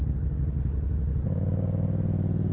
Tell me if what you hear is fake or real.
real